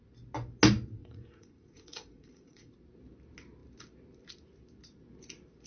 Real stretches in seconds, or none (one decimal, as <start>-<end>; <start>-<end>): 0.0-1.0; 2.7-5.7